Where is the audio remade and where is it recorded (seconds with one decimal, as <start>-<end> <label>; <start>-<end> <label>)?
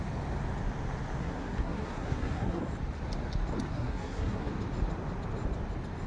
0.0-1.2 recorded; 1.2-2.6 remade; 2.6-3.7 recorded; 3.7-4.5 remade; 4.5-6.1 recorded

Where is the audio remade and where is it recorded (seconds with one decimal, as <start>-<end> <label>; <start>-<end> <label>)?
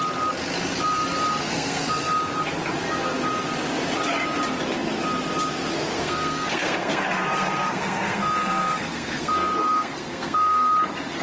0.0-1.4 recorded; 1.4-1.9 remade; 1.9-5.7 recorded; 5.7-10.7 remade; 10.7-11.2 recorded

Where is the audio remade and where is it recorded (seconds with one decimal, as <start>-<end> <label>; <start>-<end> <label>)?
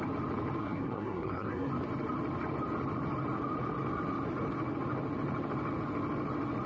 0.0-0.6 recorded; 0.6-1.7 remade; 1.7-6.7 recorded